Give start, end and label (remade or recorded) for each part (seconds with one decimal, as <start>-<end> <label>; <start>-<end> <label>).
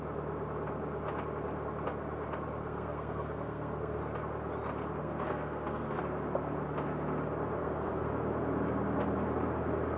0.0-2.6 recorded; 2.6-4.0 remade; 4.0-5.0 recorded; 5.0-6.0 remade; 6.0-7.6 recorded; 7.6-8.1 remade; 8.1-10.0 recorded